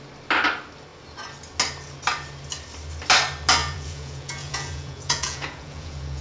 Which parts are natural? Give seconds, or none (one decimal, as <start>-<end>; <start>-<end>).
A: 0.0-3.6